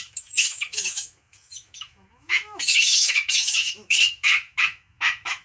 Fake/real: fake